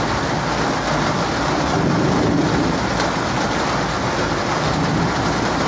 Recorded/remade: recorded